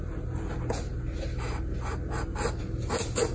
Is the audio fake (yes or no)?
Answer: no